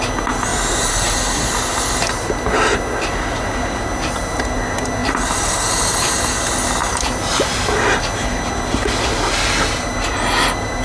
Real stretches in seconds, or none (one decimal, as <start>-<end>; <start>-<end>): 0.0-0.5; 1.3-5.0; 5.8-10.8